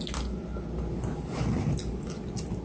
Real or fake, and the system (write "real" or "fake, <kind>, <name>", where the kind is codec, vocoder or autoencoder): real